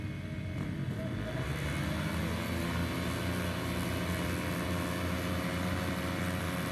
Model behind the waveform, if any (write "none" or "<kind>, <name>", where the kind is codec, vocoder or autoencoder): none